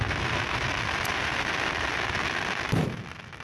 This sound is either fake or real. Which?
real